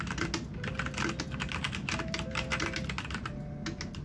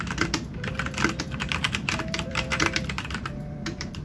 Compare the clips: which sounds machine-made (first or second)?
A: second